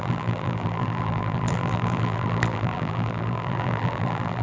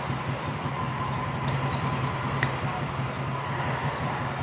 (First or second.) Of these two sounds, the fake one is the first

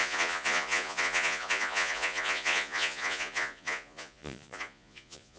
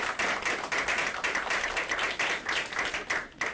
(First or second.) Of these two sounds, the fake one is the first